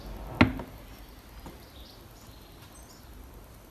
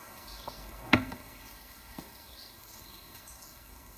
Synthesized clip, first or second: second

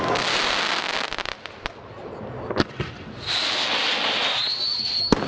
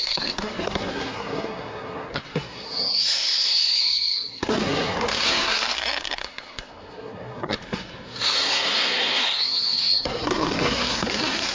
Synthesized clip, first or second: second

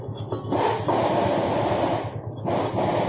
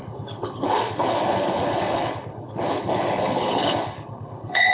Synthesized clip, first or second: second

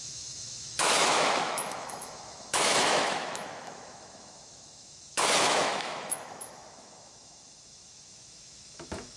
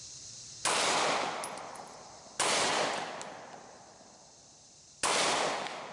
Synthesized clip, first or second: first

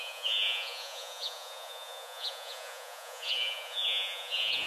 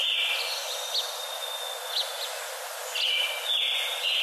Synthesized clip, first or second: first